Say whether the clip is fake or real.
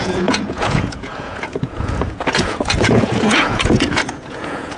fake